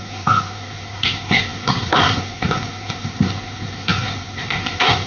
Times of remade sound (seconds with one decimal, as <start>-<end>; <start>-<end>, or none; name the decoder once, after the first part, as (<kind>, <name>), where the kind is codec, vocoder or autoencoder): 0.0-5.1 (codec, SNAC)